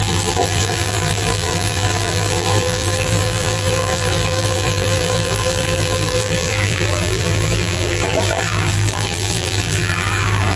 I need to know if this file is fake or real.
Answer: fake